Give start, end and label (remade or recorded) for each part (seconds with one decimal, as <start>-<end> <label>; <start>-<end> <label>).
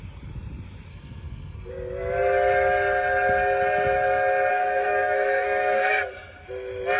0.0-0.9 recorded; 0.9-1.7 remade; 1.7-4.5 recorded; 4.5-6.0 remade; 6.0-7.0 recorded